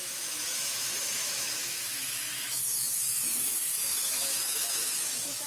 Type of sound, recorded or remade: remade